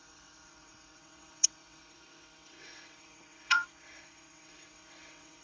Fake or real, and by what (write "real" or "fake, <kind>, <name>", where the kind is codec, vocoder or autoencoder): fake, vocoder, WaveNeXt